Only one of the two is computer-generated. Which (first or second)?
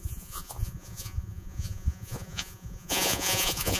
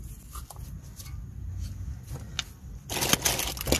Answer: first